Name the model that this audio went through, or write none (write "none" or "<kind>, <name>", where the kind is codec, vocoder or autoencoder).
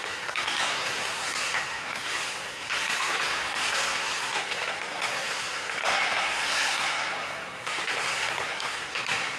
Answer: codec, SNAC